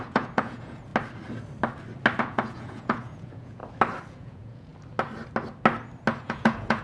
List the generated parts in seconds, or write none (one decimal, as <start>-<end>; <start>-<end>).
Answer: 0.0-0.9; 2.2-3.6; 4.1-4.7; 6.2-6.8